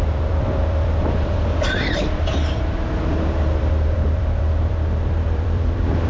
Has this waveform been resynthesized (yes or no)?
yes